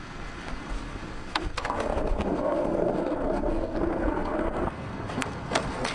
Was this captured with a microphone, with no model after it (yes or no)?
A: no